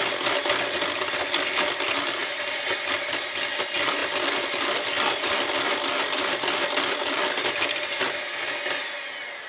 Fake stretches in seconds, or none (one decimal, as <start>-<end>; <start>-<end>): none